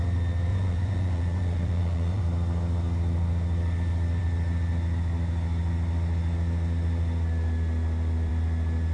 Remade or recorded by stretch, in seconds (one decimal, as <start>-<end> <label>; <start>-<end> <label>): 0.0-0.5 recorded; 0.5-2.2 remade; 2.2-8.9 recorded